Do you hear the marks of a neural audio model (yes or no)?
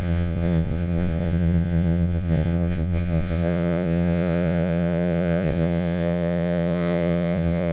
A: yes